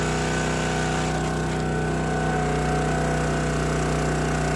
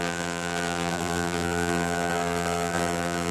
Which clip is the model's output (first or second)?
second